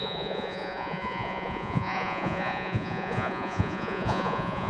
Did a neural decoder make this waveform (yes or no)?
yes